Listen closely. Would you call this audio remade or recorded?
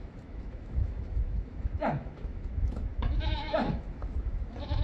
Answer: remade